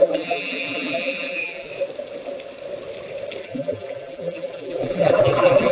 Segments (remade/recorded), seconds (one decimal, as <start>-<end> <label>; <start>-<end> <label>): 0.0-1.7 remade; 1.7-3.4 recorded; 3.4-5.7 remade